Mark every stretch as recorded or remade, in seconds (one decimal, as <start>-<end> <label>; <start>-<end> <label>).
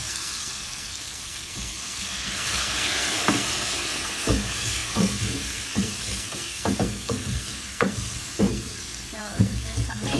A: 0.0-10.2 remade